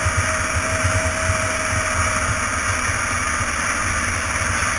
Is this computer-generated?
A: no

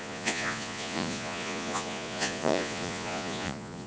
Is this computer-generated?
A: yes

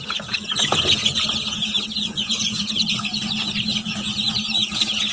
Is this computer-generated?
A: yes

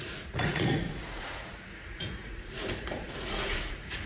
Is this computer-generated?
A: yes